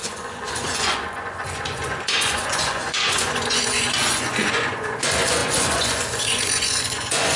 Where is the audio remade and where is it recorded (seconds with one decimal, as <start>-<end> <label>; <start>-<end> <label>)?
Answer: 0.0-7.4 remade